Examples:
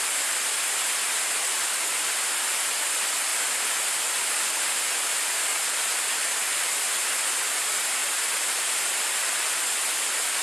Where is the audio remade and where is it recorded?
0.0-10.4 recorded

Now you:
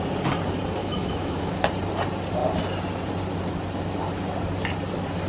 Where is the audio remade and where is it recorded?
0.0-0.8 recorded; 0.8-1.6 remade; 1.6-5.3 recorded

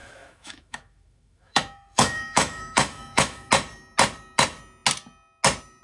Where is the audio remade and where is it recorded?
0.0-3.5 remade; 3.5-5.8 recorded